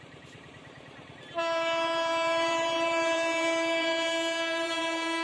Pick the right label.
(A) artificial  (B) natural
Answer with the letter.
A